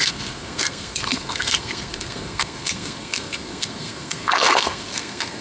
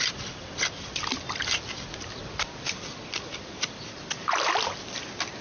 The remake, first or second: first